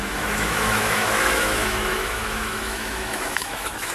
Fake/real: fake